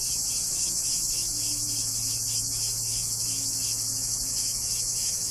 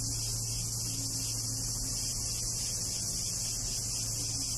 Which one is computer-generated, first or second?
first